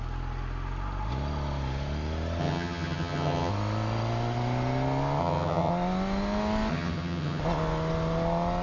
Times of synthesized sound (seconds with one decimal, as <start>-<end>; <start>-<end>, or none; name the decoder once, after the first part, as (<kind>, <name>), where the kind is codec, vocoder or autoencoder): 2.4-3.5 (vocoder, HiFi-GAN); 5.2-5.7; 6.7-7.4